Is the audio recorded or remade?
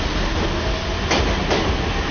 recorded